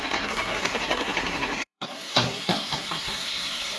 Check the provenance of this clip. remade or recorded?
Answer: remade